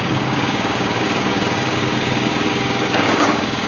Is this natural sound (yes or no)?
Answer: no